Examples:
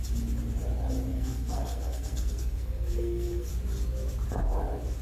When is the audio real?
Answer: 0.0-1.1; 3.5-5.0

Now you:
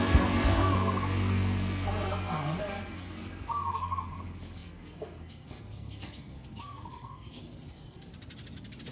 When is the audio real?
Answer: 8.1-8.9

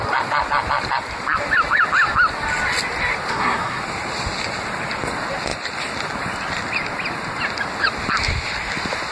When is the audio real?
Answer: 0.0-3.3; 3.8-9.1

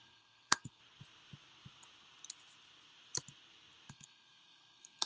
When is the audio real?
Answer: 0.8-3.9